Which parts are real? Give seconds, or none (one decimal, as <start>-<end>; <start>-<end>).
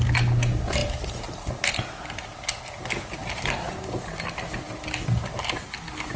0.0-0.8; 1.7-3.2; 3.7-6.2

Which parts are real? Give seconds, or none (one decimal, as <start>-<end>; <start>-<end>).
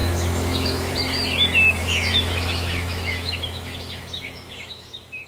0.9-1.8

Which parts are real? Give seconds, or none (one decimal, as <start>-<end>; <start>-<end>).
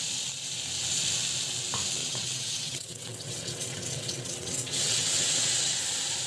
0.0-2.0; 5.8-6.3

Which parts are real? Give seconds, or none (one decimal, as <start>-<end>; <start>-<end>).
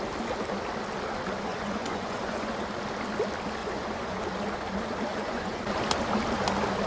0.0-1.5; 2.5-3.6; 4.2-5.1; 5.6-6.9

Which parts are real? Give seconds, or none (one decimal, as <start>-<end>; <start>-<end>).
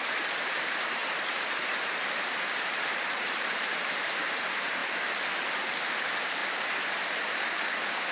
1.0-2.1; 4.8-6.0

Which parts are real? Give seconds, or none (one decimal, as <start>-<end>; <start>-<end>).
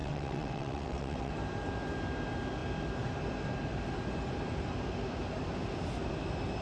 1.3-6.6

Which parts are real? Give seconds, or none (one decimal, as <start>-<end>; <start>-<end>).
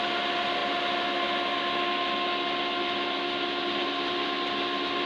0.0-5.1